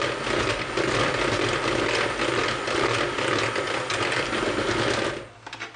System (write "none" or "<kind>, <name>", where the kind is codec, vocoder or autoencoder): none